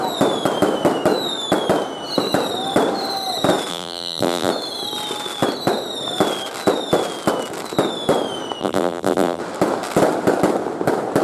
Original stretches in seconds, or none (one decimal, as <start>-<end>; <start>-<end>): 0.0-3.7; 4.5-8.6; 9.4-11.2